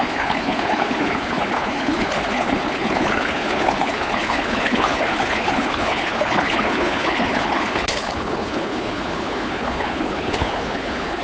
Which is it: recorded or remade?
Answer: remade